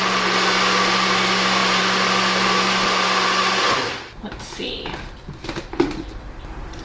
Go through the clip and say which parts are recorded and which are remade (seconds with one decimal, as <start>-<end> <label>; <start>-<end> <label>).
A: 0.0-6.8 recorded